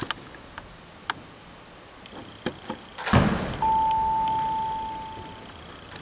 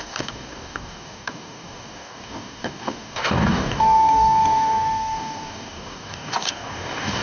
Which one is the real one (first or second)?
first